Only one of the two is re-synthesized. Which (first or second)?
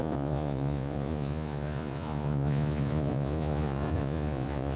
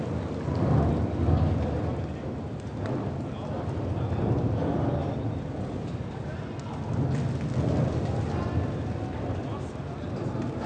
first